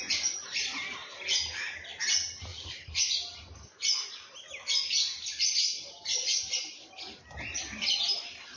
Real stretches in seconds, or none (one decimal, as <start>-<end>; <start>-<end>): 0.0-8.6

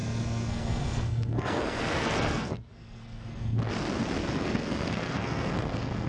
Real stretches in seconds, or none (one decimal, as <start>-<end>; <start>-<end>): 3.7-4.2